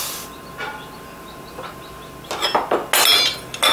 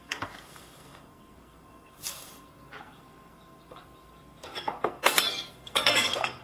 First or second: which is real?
first